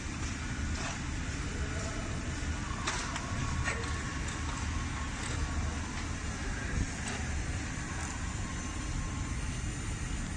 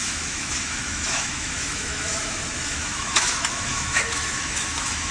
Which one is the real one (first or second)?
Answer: first